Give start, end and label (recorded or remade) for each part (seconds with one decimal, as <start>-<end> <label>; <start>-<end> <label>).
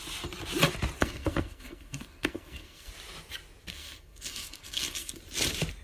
0.0-1.0 recorded; 1.0-2.9 remade; 2.9-3.7 recorded; 3.7-5.2 remade; 5.2-5.8 recorded